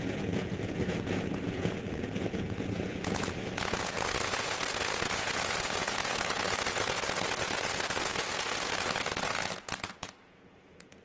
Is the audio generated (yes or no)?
yes